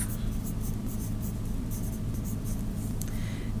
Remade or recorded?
remade